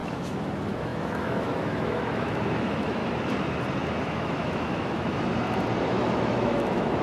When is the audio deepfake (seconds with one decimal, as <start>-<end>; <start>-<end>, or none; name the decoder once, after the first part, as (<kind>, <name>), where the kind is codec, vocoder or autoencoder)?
0.0-3.0 (autoencoder, DAC-VAE); 4.0-5.3; 5.9-7.0

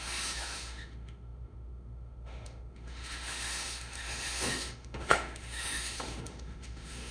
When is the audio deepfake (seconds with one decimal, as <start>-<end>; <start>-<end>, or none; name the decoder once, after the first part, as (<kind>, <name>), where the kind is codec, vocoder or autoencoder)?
0.0-7.1 (autoencoder, DAC-VAE)

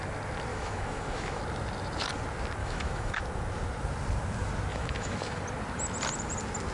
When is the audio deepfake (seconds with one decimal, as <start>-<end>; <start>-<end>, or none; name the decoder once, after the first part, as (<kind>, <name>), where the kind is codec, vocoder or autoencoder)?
0.5-1.4 (autoencoder, DAC-VAE); 2.6-3.2; 4.7-5.4

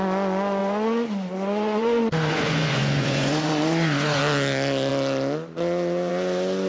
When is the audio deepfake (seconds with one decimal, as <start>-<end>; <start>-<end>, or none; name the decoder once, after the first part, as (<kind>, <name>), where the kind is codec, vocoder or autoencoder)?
0.6-4.2 (vocoder, Vocos)

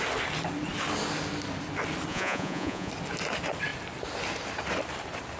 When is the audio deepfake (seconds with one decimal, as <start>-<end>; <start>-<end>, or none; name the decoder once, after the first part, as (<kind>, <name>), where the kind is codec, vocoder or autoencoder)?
2.1-2.9 (vocoder, Vocos)